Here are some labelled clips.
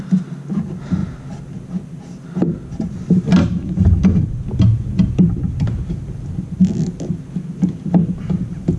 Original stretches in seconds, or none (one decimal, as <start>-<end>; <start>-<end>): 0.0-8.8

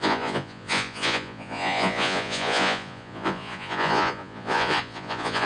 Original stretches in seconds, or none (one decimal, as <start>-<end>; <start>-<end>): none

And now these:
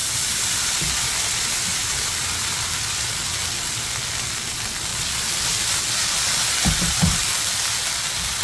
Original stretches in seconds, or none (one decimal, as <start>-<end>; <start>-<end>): 3.4-4.9; 5.5-8.4